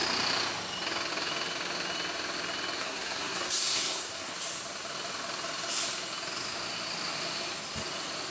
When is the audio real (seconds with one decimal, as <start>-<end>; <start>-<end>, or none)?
0.0-2.8; 4.3-8.3